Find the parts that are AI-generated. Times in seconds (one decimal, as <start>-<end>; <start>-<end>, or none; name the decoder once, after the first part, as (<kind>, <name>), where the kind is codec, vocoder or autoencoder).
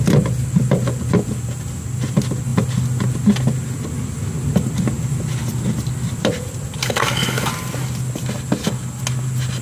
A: 6.8-7.5 (codec, DAC)